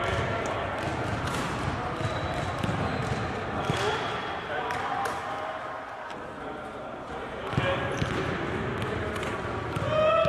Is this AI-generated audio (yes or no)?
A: no